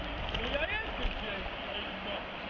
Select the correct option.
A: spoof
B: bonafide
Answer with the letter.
B